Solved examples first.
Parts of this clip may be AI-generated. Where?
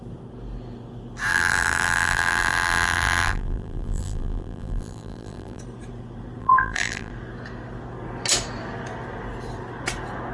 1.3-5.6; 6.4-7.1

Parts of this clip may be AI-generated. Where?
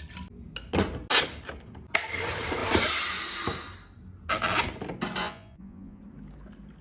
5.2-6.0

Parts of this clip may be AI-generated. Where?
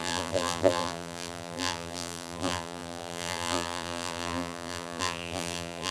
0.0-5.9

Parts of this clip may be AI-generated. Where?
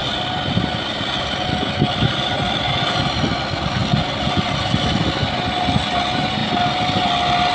none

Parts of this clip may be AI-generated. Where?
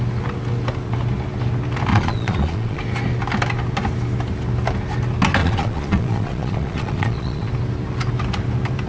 1.9-2.8; 5.4-7.5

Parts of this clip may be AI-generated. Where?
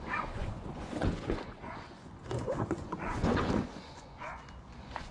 0.0-5.1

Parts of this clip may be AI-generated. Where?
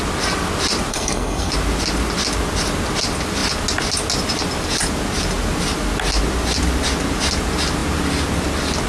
0.9-1.5